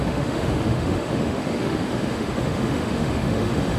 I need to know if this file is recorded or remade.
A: remade